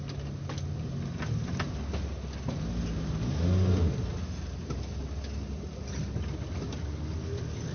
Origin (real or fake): real